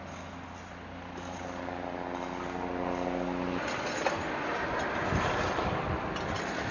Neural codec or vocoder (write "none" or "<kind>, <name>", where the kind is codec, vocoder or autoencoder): none